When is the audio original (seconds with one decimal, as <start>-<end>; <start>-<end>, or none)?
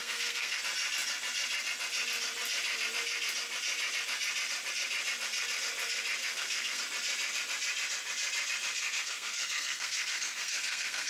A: 0.6-6.2; 6.8-8.8